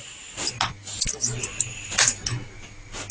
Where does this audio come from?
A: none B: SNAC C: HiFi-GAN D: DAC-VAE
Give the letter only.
A